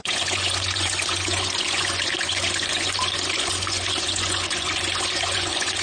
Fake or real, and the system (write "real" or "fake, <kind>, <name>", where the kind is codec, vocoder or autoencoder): fake, vocoder, Vocos